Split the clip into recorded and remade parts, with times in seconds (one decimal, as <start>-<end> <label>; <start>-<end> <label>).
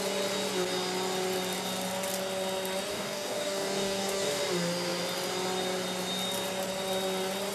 0.0-2.9 recorded; 2.9-4.4 remade; 4.4-7.5 recorded